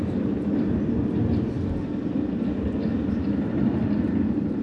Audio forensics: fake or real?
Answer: real